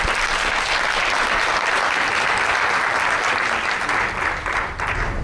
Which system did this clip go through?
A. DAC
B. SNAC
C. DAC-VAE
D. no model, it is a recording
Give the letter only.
D